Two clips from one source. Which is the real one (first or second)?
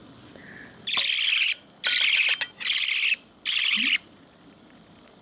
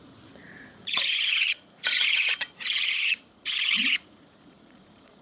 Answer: first